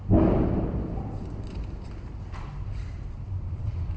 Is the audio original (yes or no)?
yes